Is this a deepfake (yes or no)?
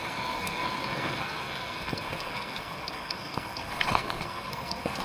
yes